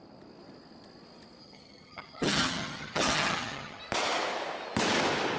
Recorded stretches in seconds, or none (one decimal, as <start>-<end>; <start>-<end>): 0.0-1.4; 3.8-5.4